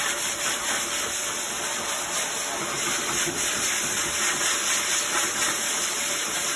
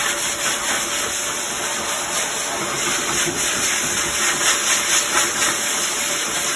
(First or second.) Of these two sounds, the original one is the second